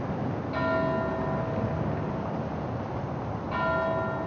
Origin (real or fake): real